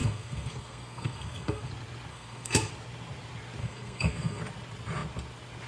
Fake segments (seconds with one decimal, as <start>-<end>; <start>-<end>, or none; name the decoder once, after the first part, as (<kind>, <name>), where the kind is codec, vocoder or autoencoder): 0.0-1.7 (codec, SNAC); 2.1-2.7; 3.6-4.4